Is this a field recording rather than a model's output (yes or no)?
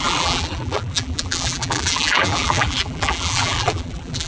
no